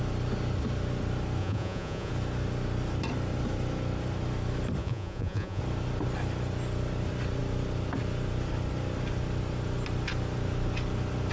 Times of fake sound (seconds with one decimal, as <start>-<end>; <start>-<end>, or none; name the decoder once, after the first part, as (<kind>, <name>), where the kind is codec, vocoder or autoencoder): 1.4-2.1 (vocoder, Vocos); 4.8-5.6